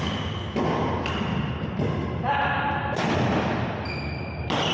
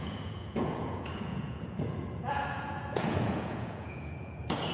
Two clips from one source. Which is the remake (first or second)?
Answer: second